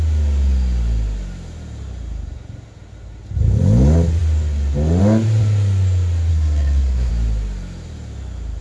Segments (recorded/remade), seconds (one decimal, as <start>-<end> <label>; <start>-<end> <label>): 0.0-6.3 recorded; 6.3-7.1 remade; 7.1-8.6 recorded